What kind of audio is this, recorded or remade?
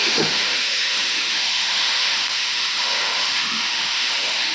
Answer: remade